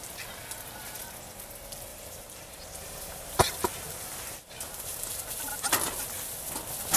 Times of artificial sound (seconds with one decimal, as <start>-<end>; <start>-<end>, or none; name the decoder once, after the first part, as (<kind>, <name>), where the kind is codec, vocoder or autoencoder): 1.9-3.3 (vocoder, BigVGAN v2); 3.7-5.4